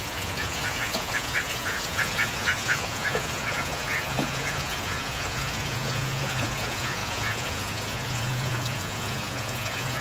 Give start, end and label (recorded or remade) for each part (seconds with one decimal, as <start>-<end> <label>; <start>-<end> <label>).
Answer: 0.0-10.0 remade